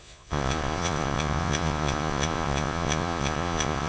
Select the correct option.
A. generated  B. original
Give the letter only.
A